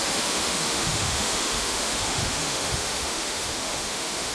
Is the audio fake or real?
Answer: fake